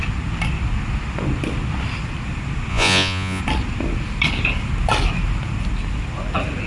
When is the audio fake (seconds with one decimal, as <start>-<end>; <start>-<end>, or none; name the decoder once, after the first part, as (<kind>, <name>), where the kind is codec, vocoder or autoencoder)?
2.7-3.4 (vocoder, Vocos)